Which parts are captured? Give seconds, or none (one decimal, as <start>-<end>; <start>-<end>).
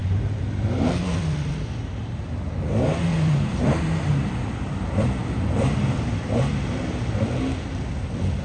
1.5-3.1; 4.5-8.4